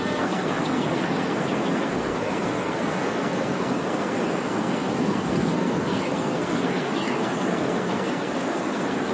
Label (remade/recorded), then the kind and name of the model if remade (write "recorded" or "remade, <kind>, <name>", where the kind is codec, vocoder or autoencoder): remade, codec, SNAC